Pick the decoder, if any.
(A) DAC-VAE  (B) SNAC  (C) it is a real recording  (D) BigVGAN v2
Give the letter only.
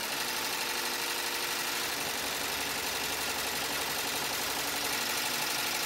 C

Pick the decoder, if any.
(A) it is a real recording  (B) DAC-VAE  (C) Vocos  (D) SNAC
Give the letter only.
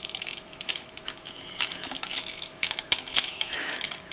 B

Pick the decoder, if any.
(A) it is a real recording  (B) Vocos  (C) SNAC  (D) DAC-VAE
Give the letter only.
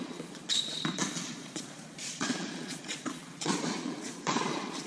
B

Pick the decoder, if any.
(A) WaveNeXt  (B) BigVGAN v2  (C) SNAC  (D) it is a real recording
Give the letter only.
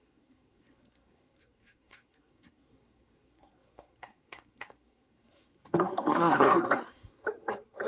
C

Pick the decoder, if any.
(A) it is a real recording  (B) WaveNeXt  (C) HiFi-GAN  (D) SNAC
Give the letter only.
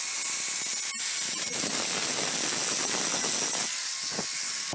A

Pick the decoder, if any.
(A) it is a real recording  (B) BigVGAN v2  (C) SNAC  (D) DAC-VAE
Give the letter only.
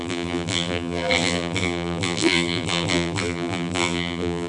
B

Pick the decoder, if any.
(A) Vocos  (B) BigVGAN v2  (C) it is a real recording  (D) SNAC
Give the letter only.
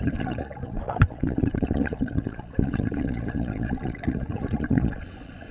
A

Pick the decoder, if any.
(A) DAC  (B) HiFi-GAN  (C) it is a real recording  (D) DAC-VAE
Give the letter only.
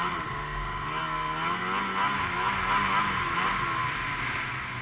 C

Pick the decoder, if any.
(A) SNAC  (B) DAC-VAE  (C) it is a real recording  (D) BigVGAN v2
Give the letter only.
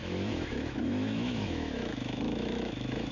B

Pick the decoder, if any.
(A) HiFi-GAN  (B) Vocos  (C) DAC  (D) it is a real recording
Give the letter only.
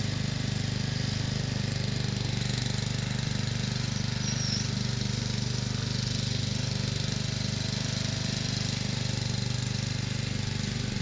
D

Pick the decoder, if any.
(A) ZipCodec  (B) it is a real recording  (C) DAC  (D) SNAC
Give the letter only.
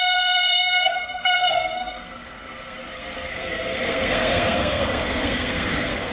D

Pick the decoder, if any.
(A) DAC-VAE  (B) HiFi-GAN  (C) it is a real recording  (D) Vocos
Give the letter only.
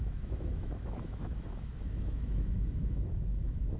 A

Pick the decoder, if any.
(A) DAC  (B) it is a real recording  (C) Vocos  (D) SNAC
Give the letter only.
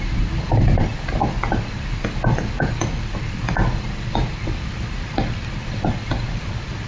B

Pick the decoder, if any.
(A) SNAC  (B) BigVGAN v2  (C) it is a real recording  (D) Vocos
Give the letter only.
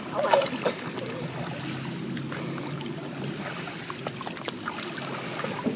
C